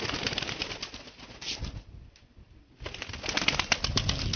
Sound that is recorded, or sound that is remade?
recorded